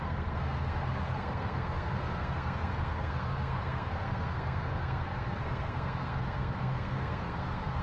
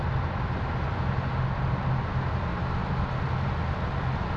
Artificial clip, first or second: first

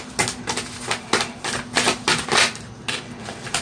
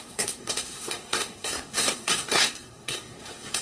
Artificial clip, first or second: second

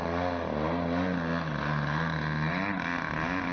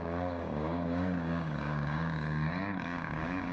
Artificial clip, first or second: second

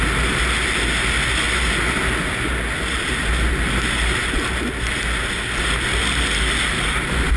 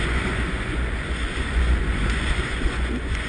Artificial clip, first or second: second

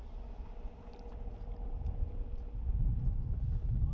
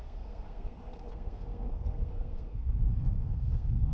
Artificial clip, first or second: second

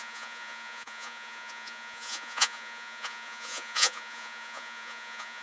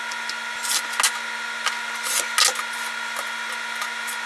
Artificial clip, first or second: first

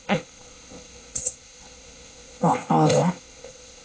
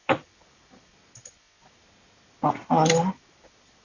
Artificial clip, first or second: first